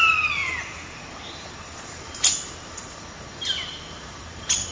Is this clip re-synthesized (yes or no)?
yes